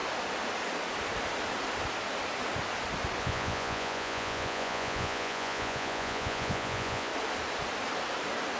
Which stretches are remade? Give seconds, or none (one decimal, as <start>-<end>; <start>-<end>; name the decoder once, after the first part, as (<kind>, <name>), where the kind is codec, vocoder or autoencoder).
3.2-7.1 (vocoder, Vocos)